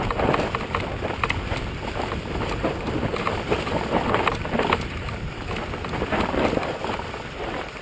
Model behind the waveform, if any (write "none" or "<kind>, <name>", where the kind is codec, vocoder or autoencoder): vocoder, BigVGAN v2